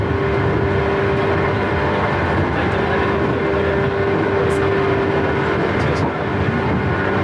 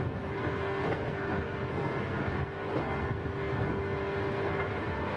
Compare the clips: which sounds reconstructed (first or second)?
second